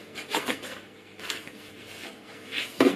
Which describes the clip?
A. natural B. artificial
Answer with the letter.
B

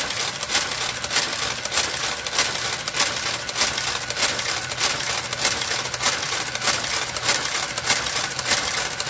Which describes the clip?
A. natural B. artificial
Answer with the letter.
A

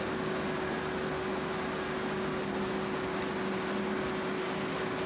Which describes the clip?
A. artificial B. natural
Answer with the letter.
B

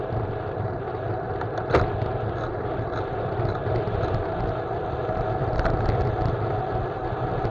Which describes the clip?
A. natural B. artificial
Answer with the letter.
A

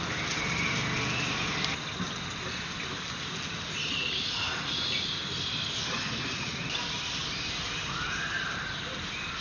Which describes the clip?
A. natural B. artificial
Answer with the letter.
A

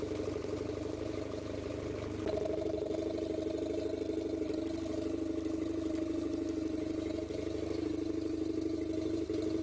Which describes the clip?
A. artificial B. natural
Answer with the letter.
B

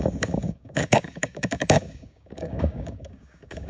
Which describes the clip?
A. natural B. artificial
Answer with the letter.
B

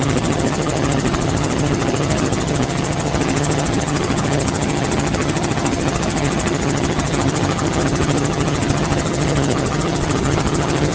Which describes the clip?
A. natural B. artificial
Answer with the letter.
B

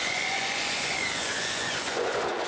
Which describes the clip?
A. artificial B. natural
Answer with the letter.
A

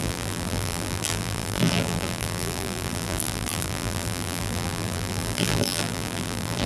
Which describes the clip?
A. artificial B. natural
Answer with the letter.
A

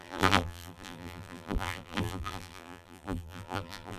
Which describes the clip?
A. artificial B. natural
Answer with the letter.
A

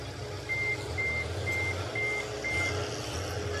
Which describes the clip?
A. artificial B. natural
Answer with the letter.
B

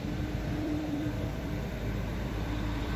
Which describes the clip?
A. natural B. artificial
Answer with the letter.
B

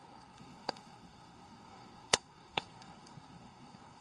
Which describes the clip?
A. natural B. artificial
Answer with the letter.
B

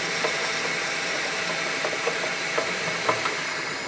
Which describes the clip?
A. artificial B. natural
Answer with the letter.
B